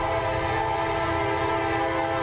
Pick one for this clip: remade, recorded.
recorded